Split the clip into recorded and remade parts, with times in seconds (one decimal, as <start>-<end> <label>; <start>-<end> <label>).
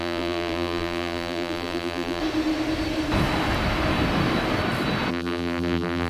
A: 0.0-2.2 remade; 2.2-5.1 recorded; 5.1-6.1 remade